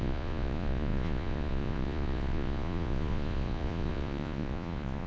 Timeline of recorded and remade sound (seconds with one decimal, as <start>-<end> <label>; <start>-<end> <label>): 0.0-5.1 remade